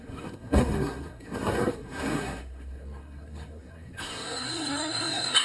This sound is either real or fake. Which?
fake